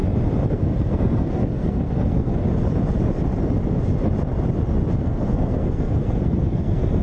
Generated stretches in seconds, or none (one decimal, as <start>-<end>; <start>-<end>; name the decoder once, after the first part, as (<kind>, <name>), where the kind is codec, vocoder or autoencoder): 0.5-2.4 (codec, SNAC); 4.9-7.0